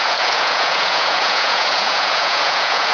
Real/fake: fake